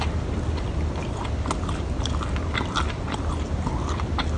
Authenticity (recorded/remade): recorded